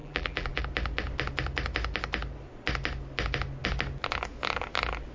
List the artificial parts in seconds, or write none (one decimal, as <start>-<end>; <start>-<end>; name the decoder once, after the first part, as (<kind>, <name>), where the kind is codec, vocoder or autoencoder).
0.0-0.6 (vocoder, BigVGAN v2)